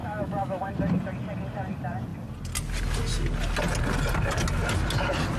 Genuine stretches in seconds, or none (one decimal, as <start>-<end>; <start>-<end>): 0.7-5.4